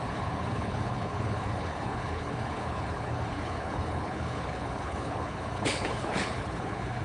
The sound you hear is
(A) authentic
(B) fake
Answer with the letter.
B